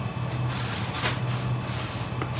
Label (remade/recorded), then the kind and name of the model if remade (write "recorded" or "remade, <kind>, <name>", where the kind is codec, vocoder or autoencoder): recorded